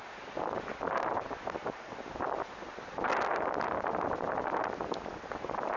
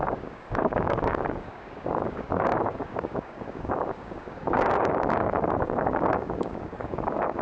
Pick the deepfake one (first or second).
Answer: second